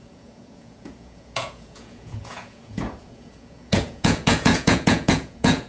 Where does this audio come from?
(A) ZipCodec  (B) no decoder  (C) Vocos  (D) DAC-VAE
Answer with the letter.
C